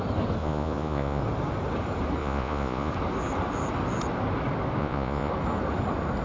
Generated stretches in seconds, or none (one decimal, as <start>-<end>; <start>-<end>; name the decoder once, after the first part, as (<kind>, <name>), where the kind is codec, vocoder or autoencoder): 0.4-1.2 (vocoder, Vocos); 2.2-2.9; 4.8-5.3